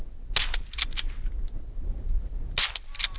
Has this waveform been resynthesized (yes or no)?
no